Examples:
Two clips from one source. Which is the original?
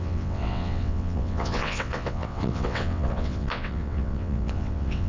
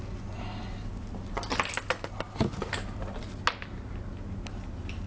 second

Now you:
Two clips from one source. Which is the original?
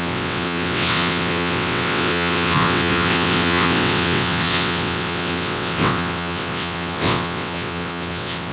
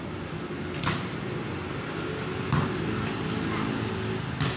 second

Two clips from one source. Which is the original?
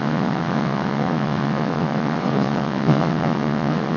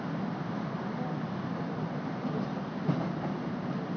second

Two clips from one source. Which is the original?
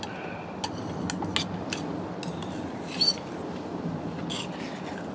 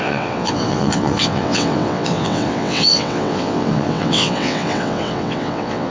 first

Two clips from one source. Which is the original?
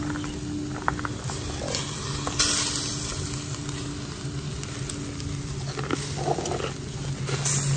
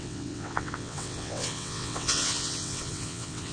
first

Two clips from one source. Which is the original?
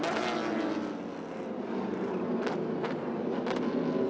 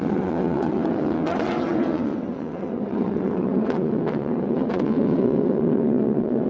first